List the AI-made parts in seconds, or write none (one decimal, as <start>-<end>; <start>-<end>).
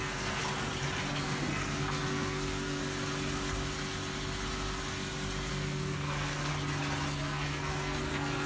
0.0-0.4; 1.1-2.8; 5.5-6.5; 7.2-8.5